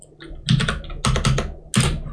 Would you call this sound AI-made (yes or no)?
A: no